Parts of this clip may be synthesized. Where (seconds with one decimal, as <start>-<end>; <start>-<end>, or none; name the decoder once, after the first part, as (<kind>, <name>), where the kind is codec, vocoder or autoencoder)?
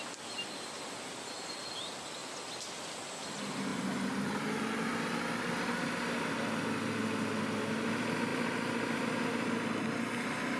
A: none